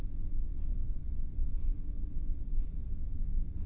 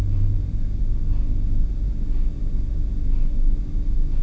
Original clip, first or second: second